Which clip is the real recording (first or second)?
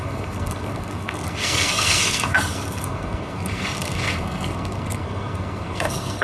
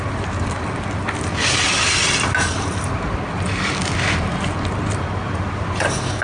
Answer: second